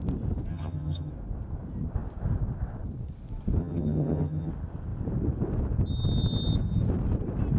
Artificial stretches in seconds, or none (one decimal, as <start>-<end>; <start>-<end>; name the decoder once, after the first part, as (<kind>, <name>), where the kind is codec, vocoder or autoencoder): 0.5-1.1 (vocoder, HiFi-GAN); 3.6-4.5